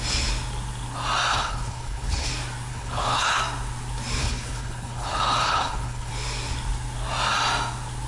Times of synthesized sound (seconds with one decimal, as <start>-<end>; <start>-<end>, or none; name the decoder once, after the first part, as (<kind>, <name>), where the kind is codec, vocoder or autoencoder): 1.3-2.3 (codec, HILCodec); 2.7-3.4; 4.2-6.1